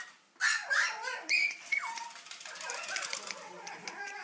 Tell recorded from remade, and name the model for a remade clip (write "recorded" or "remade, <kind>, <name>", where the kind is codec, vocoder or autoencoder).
remade, vocoder, BigVGAN v2